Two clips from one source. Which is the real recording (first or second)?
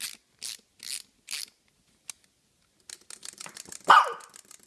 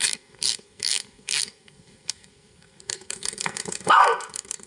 first